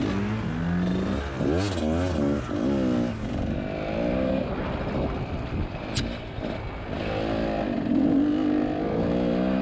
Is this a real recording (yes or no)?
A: yes